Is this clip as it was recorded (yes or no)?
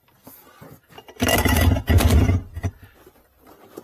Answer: no